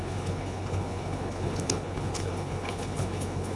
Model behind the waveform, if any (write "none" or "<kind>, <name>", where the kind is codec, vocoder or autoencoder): codec, HILCodec